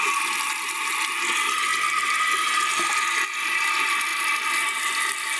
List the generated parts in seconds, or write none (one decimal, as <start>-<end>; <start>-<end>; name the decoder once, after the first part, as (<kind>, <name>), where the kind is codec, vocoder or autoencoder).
none

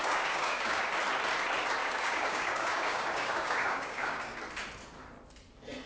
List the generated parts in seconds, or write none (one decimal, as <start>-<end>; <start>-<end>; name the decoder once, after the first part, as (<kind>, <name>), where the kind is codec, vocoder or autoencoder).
0.0-0.8 (codec, DAC); 1.8-4.4

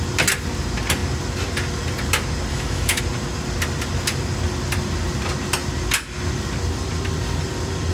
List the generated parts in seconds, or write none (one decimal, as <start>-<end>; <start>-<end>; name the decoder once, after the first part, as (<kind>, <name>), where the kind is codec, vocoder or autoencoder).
2.5-3.0 (autoencoder, DAC-VAE)

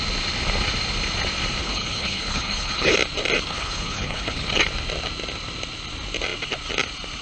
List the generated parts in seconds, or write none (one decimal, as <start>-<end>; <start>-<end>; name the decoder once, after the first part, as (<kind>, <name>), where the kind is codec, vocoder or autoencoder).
1.6-2.9 (codec, HILCodec); 3.5-4.5